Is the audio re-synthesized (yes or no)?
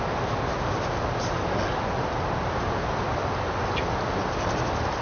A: no